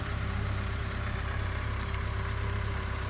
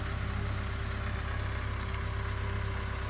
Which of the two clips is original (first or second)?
second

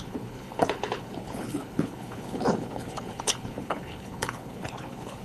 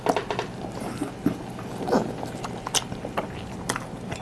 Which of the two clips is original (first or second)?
second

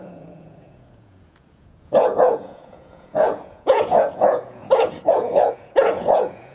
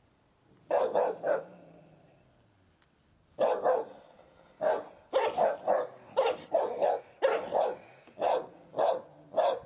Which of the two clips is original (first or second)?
second